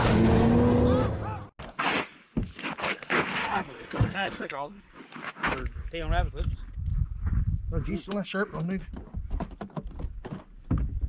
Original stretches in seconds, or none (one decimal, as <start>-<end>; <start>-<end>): 0.0-3.4; 5.0-11.1